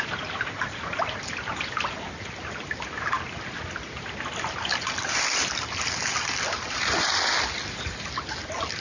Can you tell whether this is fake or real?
real